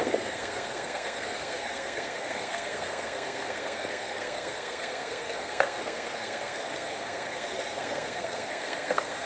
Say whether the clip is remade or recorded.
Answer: remade